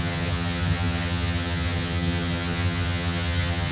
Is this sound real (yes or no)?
no